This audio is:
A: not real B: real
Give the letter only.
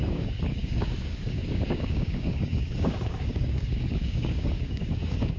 A